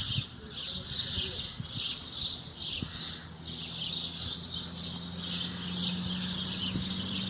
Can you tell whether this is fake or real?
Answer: real